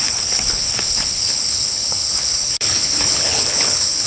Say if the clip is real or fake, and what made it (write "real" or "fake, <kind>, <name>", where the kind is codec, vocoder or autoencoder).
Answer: fake, codec, HILCodec